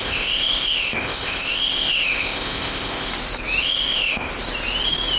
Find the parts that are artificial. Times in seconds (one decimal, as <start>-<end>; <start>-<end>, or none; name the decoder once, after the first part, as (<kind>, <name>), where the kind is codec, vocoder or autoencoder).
0.0-3.1 (codec, ZipCodec); 3.6-4.3